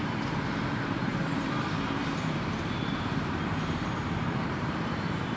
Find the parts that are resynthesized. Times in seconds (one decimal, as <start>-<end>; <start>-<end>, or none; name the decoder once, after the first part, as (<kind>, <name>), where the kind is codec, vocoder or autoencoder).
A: 0.0-5.4 (vocoder, BigVGAN v2)